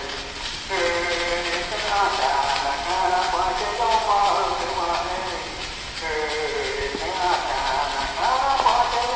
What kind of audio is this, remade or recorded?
recorded